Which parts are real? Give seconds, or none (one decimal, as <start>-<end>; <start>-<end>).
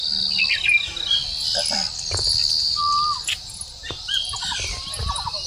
0.0-5.5